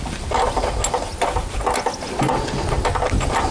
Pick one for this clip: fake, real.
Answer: real